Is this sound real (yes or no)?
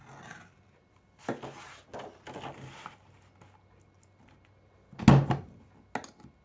yes